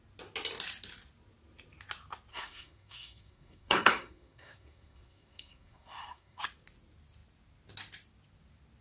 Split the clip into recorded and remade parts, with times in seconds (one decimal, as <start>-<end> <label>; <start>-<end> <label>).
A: 0.0-2.3 recorded; 2.3-6.4 remade; 6.4-8.8 recorded